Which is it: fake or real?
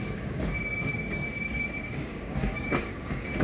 fake